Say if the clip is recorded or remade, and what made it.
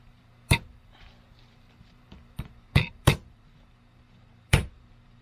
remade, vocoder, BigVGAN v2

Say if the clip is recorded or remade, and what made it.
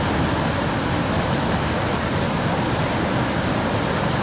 recorded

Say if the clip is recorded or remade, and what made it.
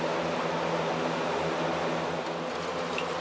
recorded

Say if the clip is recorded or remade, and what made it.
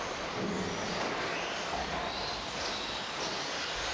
recorded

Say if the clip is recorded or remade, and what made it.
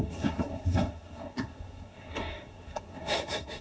remade, codec, SNAC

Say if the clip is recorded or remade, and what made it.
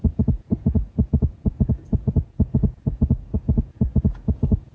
remade, vocoder, Vocos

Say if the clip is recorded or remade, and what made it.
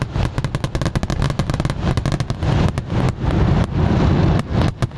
recorded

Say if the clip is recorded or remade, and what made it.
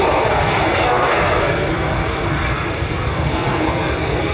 remade, codec, SNAC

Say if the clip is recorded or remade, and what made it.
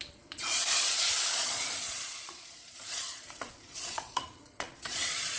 remade, vocoder, Vocos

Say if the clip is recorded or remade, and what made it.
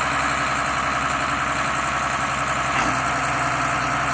recorded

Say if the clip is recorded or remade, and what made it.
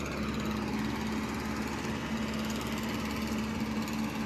recorded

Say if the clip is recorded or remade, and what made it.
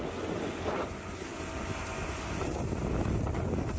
recorded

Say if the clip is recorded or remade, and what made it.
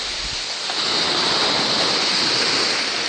recorded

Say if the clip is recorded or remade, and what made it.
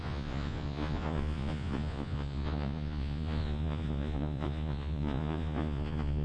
remade, vocoder, Vocos